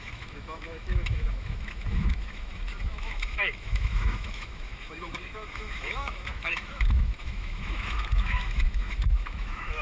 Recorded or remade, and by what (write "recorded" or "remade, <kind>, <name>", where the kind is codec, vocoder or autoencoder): remade, autoencoder, DAC-VAE